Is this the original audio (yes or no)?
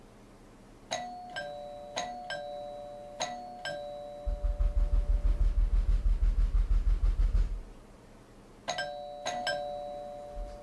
yes